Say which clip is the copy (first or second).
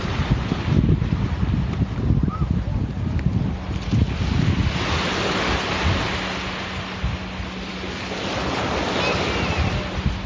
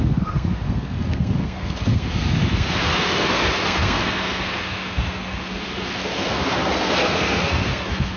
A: second